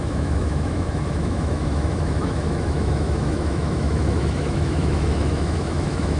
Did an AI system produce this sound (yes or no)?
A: yes